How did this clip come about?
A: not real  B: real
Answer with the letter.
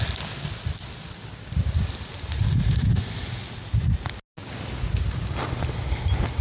B